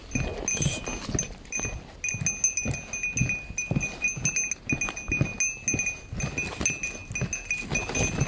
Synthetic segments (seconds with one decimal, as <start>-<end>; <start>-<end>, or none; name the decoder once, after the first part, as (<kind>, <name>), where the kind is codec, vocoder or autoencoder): none